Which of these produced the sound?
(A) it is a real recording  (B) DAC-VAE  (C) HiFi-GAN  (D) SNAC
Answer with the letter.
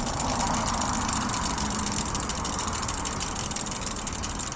A